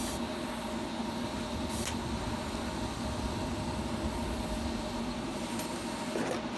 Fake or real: real